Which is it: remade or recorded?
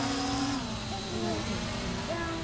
recorded